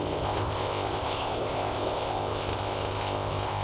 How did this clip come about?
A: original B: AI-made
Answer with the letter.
B